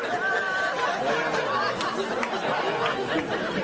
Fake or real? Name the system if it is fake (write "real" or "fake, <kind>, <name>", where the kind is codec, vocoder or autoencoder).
real